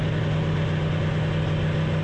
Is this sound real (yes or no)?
yes